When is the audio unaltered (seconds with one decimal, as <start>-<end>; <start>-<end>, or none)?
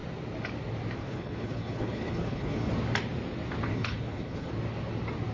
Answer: 0.0-1.0; 2.7-3.7; 4.5-5.3